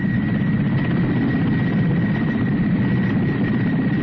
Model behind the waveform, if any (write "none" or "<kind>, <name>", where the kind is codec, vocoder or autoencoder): none